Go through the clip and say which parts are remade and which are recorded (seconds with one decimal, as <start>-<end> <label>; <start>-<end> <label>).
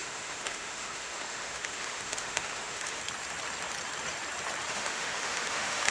0.0-3.0 remade; 3.0-4.7 recorded; 4.7-5.9 remade